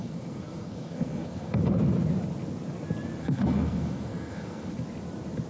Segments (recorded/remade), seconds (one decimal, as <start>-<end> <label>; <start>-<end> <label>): 0.0-1.6 remade; 1.6-3.2 recorded; 3.2-4.7 remade; 4.7-5.5 recorded